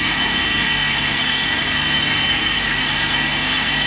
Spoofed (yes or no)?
yes